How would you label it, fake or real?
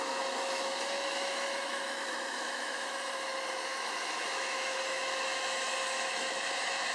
fake